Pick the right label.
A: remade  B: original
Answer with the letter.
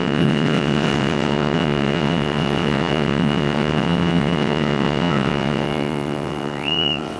A